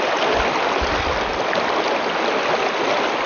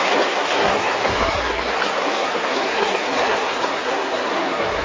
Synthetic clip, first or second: second